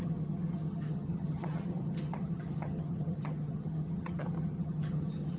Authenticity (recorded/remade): remade